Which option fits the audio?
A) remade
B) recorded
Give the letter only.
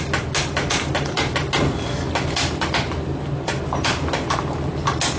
B